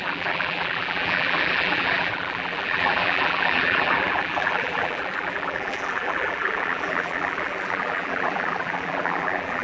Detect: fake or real fake